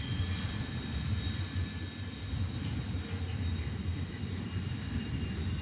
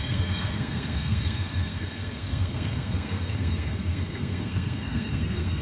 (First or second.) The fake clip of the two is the second